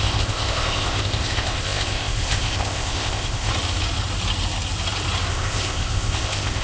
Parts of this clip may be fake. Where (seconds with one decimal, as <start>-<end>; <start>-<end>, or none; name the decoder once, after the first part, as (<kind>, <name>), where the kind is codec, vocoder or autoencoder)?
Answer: 0.0-3.5 (codec, ZipCodec); 5.3-6.6